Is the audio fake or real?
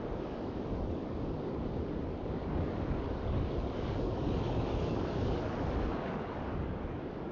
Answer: fake